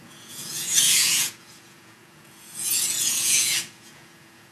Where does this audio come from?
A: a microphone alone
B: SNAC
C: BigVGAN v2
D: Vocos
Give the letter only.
D